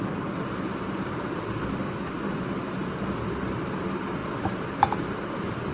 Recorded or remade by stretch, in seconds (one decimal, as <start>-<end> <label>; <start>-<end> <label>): 0.0-5.7 recorded

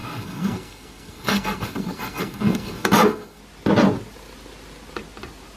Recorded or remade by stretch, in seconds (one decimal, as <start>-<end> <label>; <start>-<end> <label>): 0.0-3.4 remade; 3.4-5.6 recorded